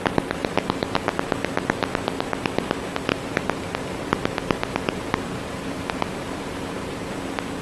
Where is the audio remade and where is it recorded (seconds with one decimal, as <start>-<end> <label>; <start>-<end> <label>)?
0.0-0.4 recorded; 0.4-1.1 remade; 1.1-3.1 recorded; 3.1-7.1 remade; 7.1-7.6 recorded